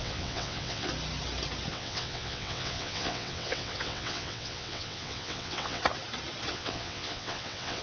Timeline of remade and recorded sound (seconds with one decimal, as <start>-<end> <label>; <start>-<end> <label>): 0.0-0.9 remade; 0.9-1.7 recorded; 1.7-5.8 remade; 5.8-6.5 recorded; 6.5-7.8 remade